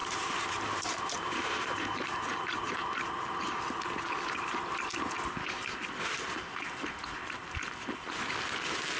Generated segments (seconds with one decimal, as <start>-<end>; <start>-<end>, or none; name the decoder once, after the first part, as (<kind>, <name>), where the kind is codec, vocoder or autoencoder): 0.0-5.1 (vocoder, BigVGAN v2)